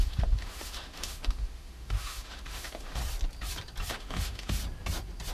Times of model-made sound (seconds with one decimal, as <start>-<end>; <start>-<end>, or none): 0.0-3.0; 3.9-4.6